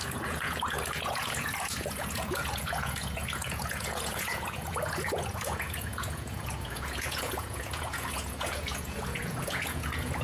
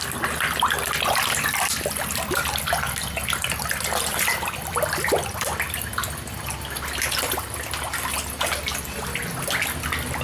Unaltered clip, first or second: second